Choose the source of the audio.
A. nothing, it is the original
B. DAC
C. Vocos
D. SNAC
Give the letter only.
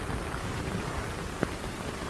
A